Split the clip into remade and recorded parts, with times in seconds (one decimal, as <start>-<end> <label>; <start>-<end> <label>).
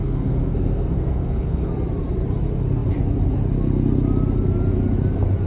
0.0-1.7 remade; 1.7-5.5 recorded